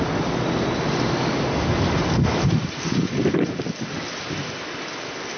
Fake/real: real